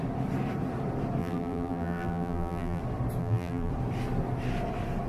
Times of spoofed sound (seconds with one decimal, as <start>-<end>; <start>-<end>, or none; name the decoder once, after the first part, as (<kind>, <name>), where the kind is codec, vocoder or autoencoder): 1.2-2.8 (vocoder, BigVGAN v2); 3.2-3.7